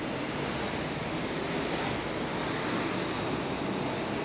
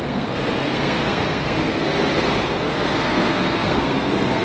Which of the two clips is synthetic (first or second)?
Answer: second